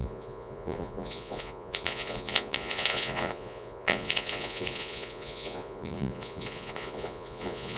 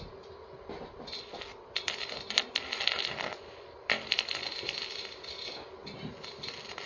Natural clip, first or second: second